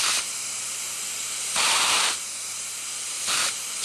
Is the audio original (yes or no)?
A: no